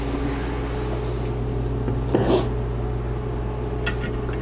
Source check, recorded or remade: recorded